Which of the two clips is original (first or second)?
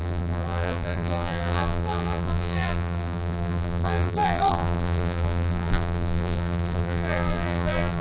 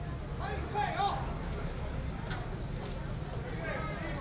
second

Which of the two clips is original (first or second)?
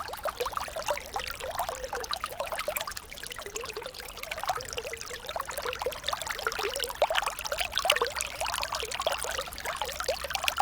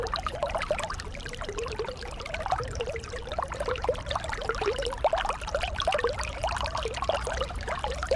first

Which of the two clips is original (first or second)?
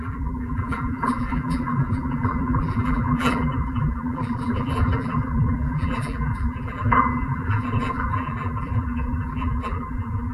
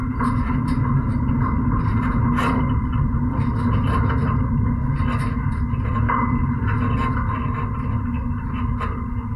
second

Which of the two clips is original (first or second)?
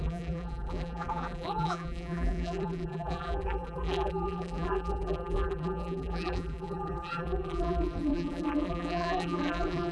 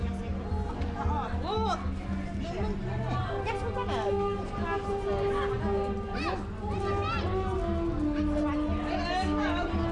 second